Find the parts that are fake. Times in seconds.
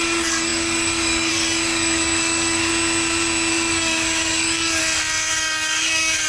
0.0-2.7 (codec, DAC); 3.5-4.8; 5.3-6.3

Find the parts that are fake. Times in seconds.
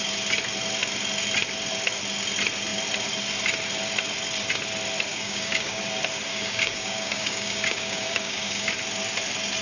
5.1-5.8 (codec, DAC); 6.3-8.7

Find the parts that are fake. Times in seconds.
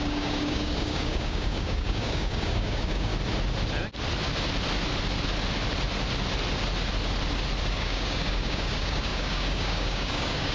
0.0-3.1 (codec, DAC); 7.7-10.5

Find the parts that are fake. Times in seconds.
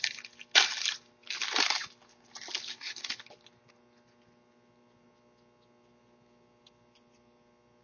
2.7-3.2 (codec, DAC)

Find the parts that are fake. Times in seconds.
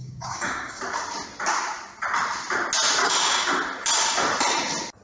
0.0-0.8 (codec, DAC); 3.0-3.5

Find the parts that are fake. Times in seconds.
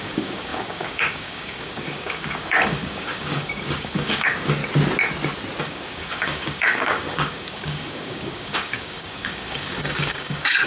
0.0-4.6 (codec, DAC); 5.6-10.7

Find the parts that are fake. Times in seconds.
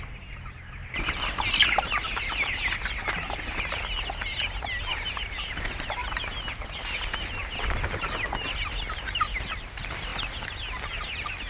none